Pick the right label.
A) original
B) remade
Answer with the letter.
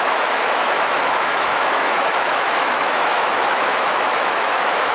B